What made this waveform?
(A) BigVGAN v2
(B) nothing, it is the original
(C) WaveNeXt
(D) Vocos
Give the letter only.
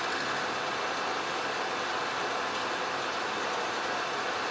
B